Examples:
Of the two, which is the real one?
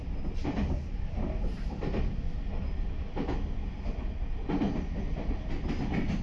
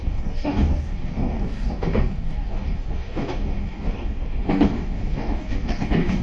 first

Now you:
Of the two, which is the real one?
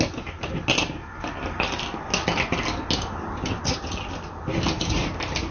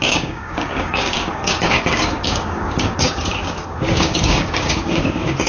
first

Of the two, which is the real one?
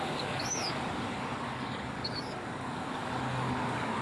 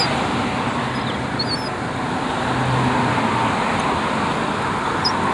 second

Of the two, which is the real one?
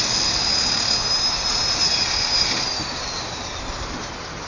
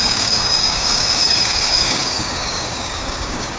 first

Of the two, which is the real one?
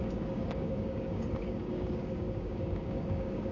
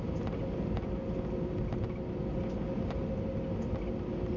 second